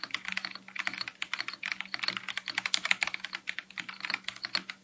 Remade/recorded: recorded